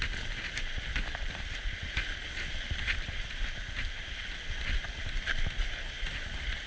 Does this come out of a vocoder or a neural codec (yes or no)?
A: no